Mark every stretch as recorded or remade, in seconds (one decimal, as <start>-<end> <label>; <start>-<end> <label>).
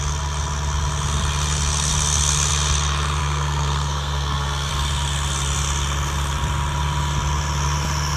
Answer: 0.0-3.2 recorded; 3.2-4.7 remade; 4.7-8.2 recorded